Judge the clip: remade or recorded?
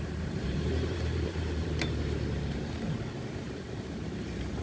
remade